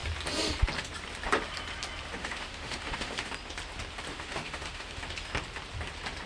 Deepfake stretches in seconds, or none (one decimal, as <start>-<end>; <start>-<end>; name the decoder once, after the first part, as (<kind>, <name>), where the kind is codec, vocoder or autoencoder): 2.2-3.3 (autoencoder, DAC-VAE); 4.1-5.0